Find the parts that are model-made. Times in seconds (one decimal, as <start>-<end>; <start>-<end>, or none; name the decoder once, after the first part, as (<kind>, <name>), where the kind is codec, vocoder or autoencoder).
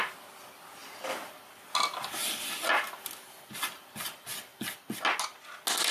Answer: none